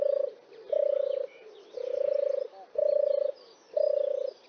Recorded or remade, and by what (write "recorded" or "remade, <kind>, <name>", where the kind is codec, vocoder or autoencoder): recorded